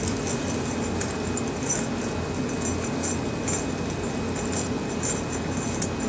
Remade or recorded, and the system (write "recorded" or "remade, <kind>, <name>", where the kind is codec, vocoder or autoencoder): recorded